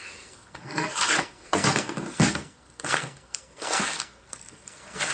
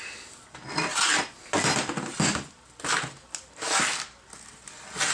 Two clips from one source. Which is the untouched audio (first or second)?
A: second